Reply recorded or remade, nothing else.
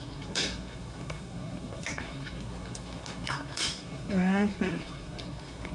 remade